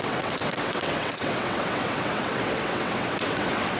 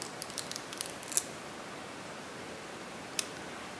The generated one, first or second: first